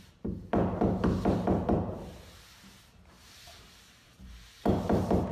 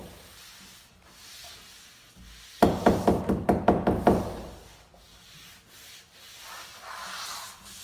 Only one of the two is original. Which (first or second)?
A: second